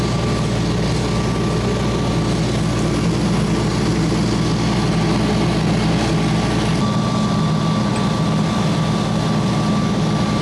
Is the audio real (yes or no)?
yes